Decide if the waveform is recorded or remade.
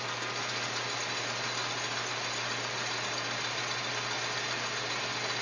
recorded